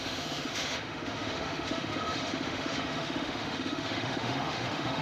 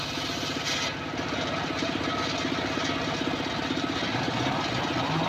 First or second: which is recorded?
second